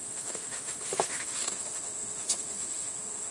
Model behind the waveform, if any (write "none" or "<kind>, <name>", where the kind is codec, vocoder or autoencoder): autoencoder, DAC-VAE